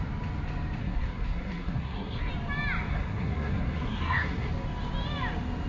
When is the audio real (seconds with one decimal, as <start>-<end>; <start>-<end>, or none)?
0.0-0.8; 2.3-2.9; 4.5-5.7